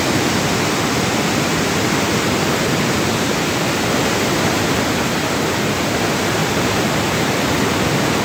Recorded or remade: recorded